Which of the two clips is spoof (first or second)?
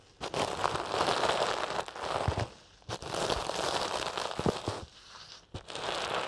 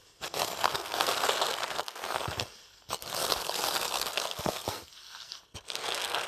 second